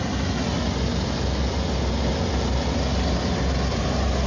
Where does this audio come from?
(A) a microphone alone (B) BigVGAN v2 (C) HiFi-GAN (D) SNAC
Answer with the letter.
A